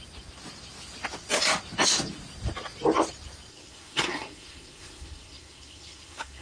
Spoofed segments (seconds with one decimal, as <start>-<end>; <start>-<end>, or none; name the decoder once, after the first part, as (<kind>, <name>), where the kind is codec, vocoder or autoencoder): 3.5-6.4 (codec, SNAC)